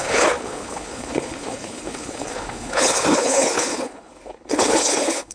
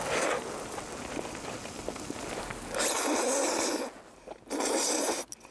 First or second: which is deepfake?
first